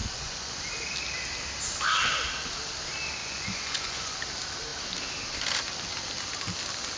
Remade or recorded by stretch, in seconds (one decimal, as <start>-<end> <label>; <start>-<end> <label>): 0.0-0.6 remade; 0.6-3.2 recorded; 3.2-4.2 remade; 4.2-7.0 recorded